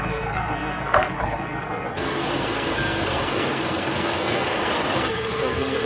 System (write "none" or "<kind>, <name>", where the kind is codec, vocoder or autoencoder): codec, SNAC